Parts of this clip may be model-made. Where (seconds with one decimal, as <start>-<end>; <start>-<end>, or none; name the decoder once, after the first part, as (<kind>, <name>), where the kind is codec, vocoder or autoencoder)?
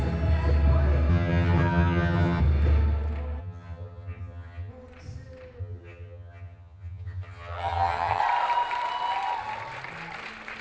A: 1.1-2.4 (vocoder, HiFi-GAN); 3.4-4.7; 5.6-8.2